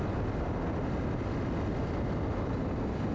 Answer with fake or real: real